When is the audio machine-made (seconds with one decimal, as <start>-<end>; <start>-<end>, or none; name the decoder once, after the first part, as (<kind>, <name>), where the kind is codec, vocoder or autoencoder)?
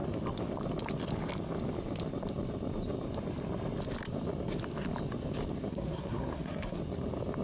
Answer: 5.7-6.8 (codec, SNAC)